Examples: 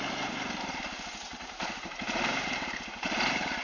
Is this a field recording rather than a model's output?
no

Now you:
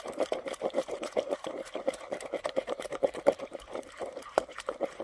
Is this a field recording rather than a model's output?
no